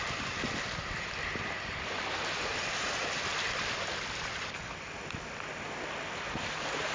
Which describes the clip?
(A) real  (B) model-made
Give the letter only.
A